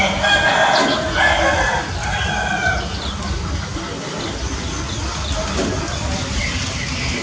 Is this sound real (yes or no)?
yes